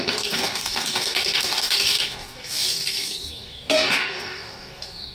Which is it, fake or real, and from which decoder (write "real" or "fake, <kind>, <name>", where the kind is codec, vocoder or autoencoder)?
fake, codec, DAC